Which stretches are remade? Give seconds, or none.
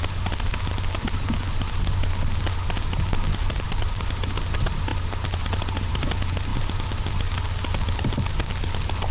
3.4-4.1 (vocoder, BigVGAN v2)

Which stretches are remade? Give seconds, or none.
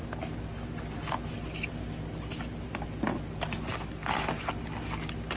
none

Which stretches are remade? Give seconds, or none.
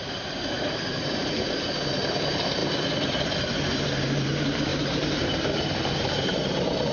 0.0-2.6 (vocoder, BigVGAN v2); 3.7-6.9